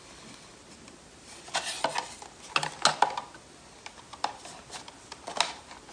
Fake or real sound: real